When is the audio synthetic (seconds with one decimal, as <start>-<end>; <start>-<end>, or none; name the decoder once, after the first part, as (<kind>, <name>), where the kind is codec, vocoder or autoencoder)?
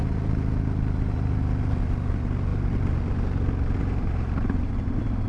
none